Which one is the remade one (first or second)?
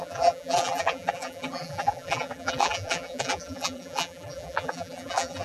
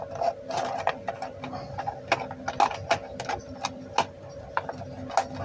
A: first